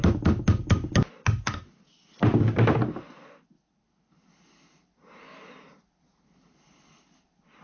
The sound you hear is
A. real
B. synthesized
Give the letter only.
A